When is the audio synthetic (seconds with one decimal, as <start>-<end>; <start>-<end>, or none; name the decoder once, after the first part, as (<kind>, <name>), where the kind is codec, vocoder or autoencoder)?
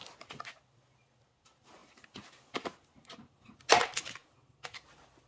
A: none